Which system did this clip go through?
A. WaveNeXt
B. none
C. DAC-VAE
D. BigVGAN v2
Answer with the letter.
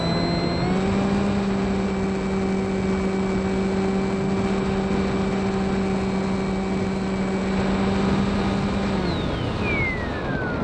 B